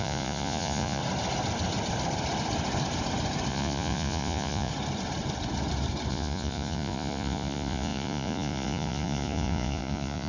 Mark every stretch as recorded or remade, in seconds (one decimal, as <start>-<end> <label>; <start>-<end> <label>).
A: 0.0-1.0 remade; 1.0-3.5 recorded; 3.5-4.7 remade; 4.7-6.1 recorded; 6.1-10.3 remade